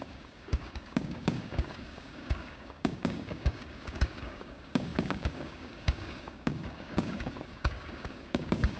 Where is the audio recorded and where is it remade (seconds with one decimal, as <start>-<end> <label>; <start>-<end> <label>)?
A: 0.0-8.8 remade

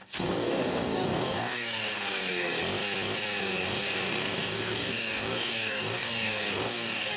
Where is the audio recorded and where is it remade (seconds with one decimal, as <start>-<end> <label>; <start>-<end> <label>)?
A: 0.0-2.6 remade; 2.6-3.4 recorded; 3.4-7.2 remade

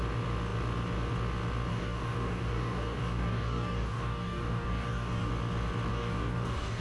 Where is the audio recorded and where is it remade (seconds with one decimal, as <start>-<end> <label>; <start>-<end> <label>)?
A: 0.0-1.7 recorded; 1.7-5.3 remade; 5.3-5.9 recorded; 5.9-6.8 remade

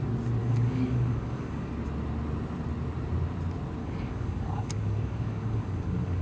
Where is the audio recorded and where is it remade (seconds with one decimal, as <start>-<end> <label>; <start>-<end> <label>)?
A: 0.0-0.4 recorded; 0.4-1.7 remade; 1.7-3.8 recorded; 3.8-6.2 remade

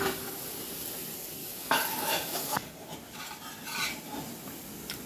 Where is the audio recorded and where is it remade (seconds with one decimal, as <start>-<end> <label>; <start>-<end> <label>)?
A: 0.0-1.4 recorded; 1.4-2.9 remade; 2.9-5.1 recorded

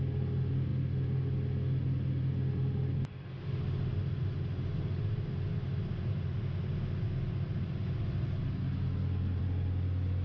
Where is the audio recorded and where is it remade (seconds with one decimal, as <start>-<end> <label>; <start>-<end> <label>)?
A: 0.0-10.2 recorded